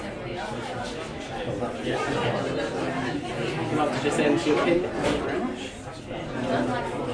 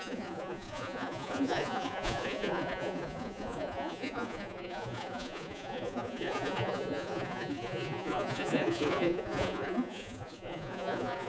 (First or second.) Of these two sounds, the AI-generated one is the second